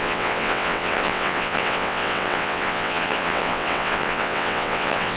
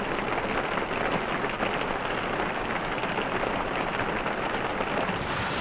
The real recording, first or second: second